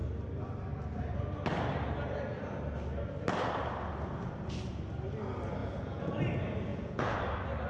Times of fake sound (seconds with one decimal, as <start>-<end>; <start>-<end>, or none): 5.6-6.2; 6.7-7.2